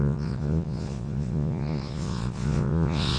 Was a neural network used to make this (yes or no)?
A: yes